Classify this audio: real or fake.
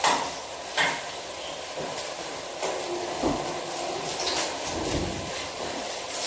real